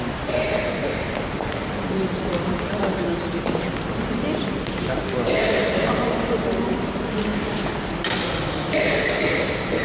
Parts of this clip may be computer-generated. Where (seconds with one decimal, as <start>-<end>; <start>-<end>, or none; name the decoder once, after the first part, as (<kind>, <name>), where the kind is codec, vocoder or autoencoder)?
none